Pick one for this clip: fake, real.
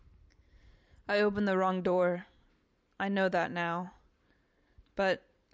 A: fake